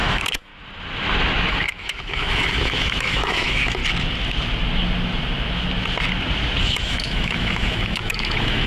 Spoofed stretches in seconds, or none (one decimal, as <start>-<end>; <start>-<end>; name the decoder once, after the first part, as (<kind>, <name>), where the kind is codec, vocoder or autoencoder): 0.0-0.5 (autoencoder, DAC-VAE); 1.5-3.8; 6.6-8.7